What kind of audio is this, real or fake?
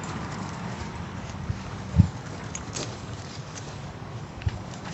fake